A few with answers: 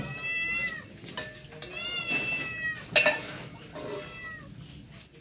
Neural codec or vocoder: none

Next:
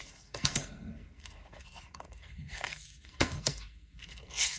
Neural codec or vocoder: codec, SNAC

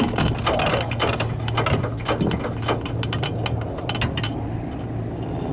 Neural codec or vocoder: none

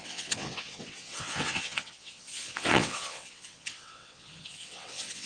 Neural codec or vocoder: vocoder, WaveNeXt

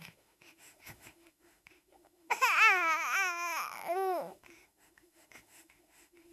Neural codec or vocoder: autoencoder, DAC-VAE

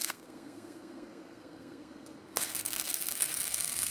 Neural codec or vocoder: codec, SNAC